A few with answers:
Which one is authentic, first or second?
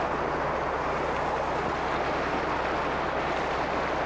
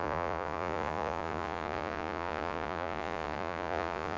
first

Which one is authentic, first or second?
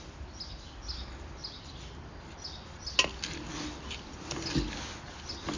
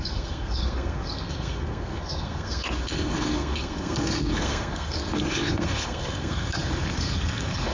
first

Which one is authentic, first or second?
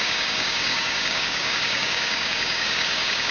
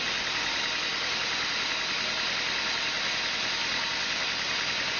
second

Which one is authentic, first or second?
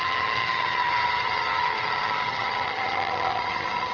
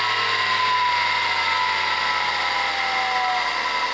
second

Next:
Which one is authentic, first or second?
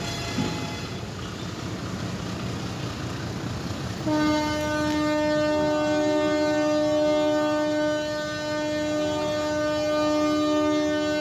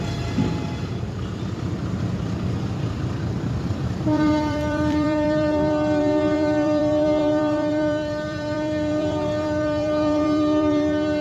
first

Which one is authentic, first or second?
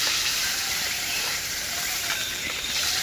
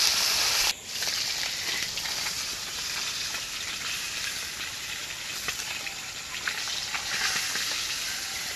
second